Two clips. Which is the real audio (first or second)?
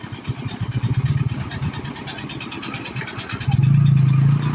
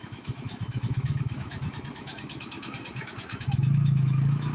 first